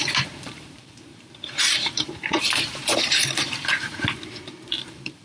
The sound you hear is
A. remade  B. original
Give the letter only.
A